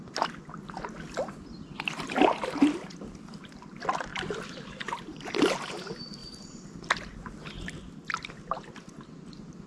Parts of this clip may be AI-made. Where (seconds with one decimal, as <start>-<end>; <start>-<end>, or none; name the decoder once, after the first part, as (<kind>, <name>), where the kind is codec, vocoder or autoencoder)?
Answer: none